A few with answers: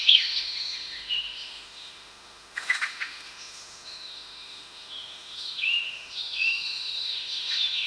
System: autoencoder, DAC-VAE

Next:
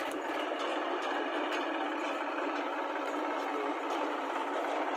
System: none